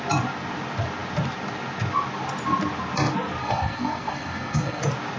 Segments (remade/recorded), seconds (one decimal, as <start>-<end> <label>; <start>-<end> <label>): 0.0-3.4 recorded; 3.4-4.8 remade; 4.8-5.2 recorded